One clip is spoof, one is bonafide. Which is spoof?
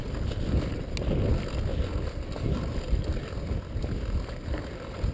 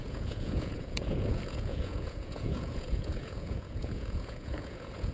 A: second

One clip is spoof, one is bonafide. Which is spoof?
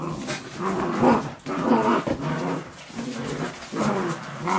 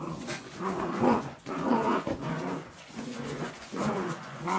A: second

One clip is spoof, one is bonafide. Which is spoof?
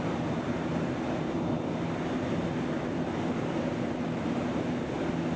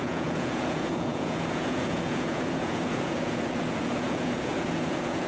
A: second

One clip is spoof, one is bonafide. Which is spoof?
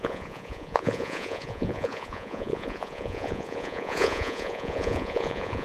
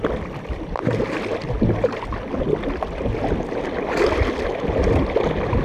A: first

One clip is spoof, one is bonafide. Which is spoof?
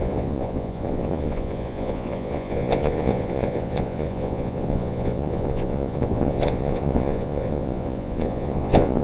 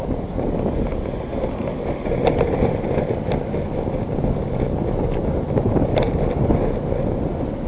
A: first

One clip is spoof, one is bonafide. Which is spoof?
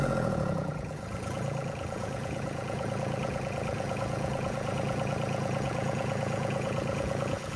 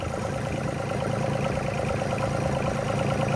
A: first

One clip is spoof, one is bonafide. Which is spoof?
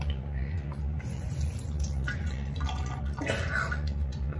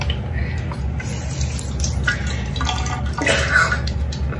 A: first